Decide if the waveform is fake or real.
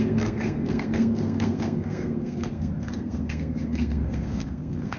fake